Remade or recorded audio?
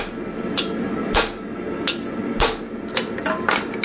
recorded